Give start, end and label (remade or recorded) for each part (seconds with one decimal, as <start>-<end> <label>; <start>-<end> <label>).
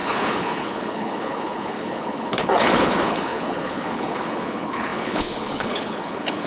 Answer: 0.0-6.5 remade